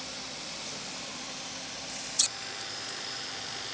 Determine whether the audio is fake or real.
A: real